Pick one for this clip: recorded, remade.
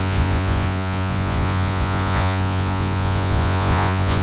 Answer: remade